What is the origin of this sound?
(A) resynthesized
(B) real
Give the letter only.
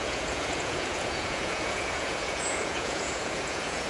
A